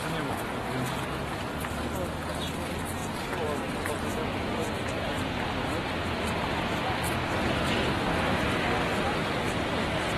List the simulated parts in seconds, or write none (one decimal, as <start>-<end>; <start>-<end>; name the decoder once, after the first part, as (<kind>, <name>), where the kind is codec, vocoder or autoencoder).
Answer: none